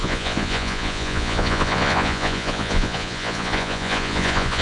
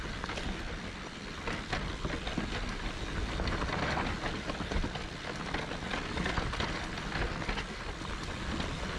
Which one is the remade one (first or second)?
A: first